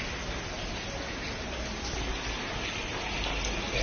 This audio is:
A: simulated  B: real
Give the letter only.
B